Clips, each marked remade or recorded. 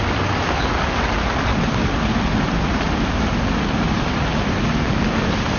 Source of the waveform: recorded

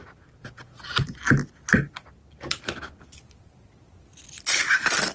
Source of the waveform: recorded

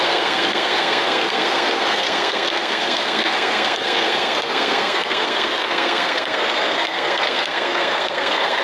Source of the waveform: remade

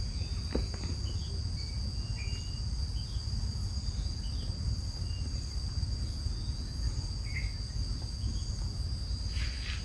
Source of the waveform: recorded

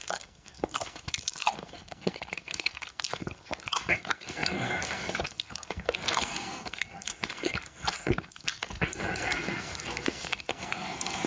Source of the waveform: remade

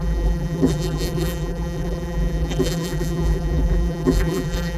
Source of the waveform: remade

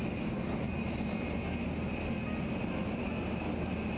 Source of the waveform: recorded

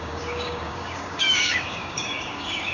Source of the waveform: remade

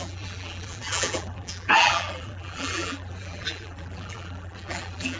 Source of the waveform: remade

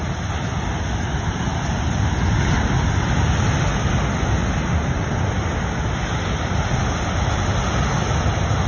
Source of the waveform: recorded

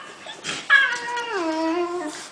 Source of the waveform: recorded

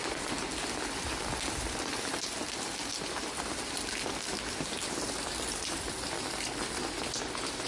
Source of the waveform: recorded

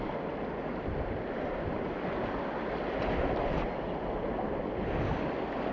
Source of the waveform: recorded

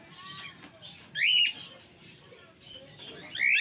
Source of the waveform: recorded